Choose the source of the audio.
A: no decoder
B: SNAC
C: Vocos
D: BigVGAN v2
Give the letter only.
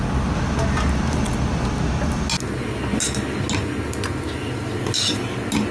A